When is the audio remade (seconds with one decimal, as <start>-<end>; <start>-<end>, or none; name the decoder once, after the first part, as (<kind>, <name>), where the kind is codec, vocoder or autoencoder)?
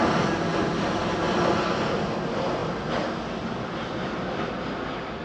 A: 0.5-2.0 (vocoder, BigVGAN v2)